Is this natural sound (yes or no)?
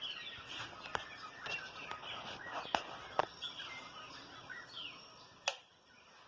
yes